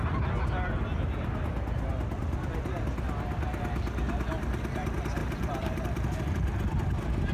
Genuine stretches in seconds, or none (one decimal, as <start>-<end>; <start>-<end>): 0.0-5.2; 5.8-7.3